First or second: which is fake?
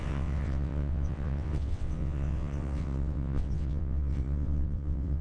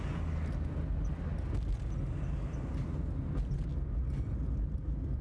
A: first